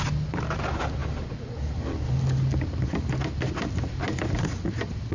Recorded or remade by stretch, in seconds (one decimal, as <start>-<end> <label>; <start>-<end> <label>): 0.0-5.1 recorded